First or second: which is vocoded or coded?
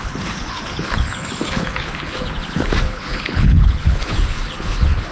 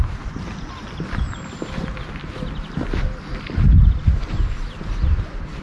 first